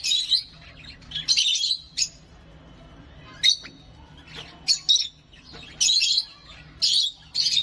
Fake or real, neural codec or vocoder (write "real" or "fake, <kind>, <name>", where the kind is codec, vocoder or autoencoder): real